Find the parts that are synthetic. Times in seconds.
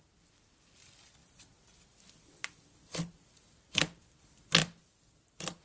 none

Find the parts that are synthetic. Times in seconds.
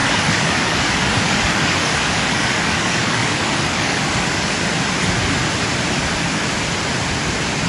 0.0-4.6 (codec, DAC)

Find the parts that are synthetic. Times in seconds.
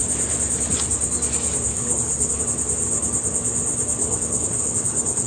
1.7-2.4 (codec, HILCodec); 4.0-5.3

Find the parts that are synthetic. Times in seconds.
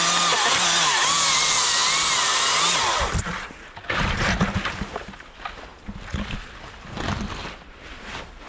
none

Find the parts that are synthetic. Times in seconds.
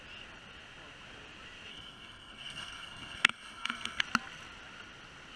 1.7-4.0 (codec, SNAC)